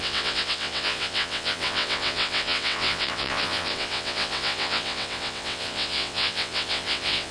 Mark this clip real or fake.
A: fake